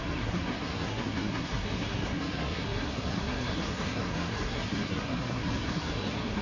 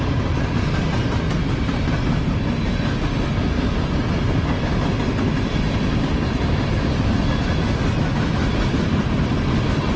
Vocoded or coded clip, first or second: first